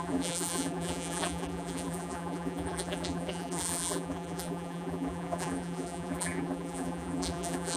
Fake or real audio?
fake